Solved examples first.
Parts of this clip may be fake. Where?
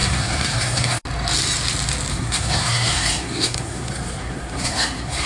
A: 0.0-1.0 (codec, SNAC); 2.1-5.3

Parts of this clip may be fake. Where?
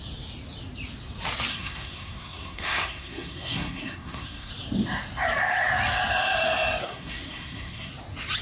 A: 1.5-4.5 (codec, SNAC); 6.8-7.9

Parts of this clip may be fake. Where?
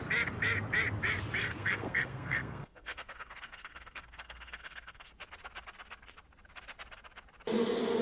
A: 1.4-5.1 (codec, SNAC)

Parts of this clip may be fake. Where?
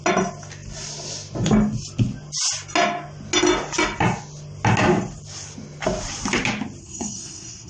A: 6.8-7.7 (codec, SNAC)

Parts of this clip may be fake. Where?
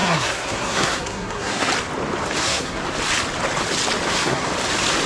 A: 0.0-1.7 (codec, SNAC); 2.4-2.8; 4.1-4.5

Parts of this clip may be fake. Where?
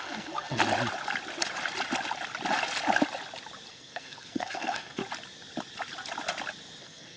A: 0.0-0.6 (codec, SNAC); 3.7-5.0; 6.8-7.2